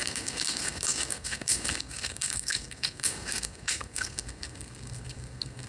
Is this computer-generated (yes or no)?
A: yes